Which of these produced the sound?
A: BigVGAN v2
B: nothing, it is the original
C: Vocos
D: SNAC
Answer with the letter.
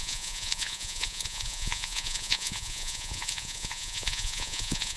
C